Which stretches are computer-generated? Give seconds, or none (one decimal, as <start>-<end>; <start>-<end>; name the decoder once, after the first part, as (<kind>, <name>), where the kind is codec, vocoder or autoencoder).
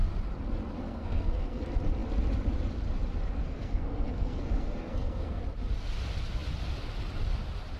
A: 0.8-1.6 (codec, SNAC); 3.4-5.4